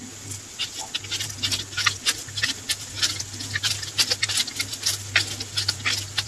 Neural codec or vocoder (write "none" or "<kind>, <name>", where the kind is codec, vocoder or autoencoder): none